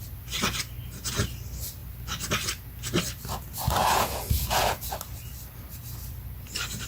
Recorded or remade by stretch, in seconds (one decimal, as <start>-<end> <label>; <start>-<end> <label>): 0.0-3.8 recorded; 3.8-4.9 remade; 4.9-6.9 recorded